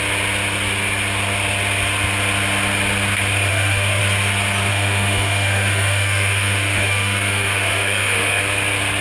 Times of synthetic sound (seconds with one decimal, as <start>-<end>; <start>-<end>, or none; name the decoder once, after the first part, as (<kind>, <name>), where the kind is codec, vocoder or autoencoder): 3.5-4.0 (autoencoder, DAC-VAE); 4.7-8.4